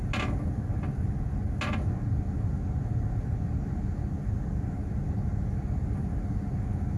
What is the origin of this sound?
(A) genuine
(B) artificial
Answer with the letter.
A